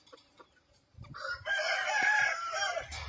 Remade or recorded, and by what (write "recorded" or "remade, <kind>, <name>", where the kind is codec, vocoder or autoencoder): remade, vocoder, BigVGAN v2